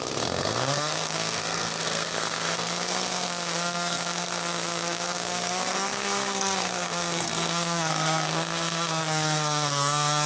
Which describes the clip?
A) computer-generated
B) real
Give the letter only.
A